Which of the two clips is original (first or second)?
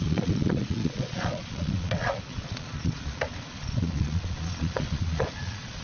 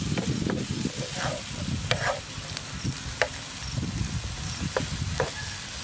second